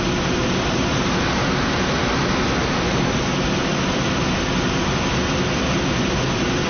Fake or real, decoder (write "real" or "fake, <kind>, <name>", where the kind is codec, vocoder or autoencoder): real